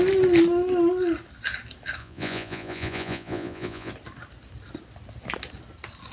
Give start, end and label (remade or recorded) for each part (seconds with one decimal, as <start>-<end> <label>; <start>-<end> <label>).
0.0-2.0 recorded; 2.0-3.9 remade; 3.9-6.1 recorded